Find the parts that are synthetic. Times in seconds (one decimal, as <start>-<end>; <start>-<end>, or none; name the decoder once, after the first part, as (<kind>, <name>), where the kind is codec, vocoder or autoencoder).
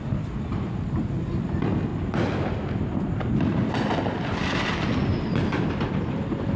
none